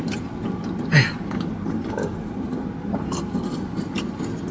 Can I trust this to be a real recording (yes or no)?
yes